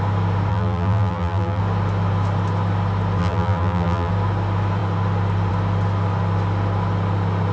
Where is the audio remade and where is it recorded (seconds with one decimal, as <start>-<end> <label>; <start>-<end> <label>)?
0.0-0.5 recorded; 0.5-1.6 remade; 1.6-3.2 recorded; 3.2-4.1 remade; 4.1-7.5 recorded